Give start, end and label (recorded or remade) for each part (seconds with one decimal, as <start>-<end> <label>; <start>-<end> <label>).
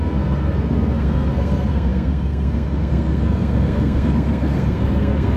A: 0.0-5.4 remade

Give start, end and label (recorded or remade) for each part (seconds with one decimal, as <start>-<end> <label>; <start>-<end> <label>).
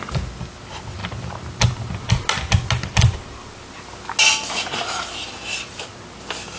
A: 0.0-6.6 recorded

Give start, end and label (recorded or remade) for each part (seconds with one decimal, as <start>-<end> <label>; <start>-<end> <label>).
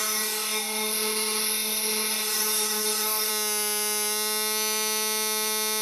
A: 0.0-3.3 remade; 3.3-5.8 recorded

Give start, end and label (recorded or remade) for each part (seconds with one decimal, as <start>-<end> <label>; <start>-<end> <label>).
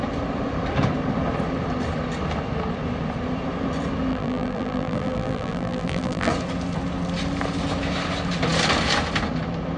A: 0.0-4.1 recorded; 4.1-6.3 remade; 6.3-9.8 recorded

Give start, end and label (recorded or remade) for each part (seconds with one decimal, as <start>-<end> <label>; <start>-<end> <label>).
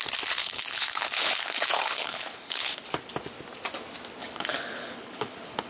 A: 0.0-0.4 recorded; 0.4-2.8 remade; 2.8-4.2 recorded; 4.2-5.7 remade